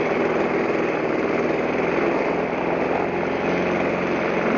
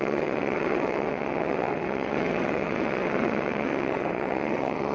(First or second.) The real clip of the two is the first